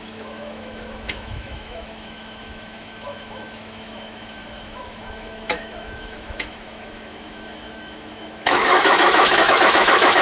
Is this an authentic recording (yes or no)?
no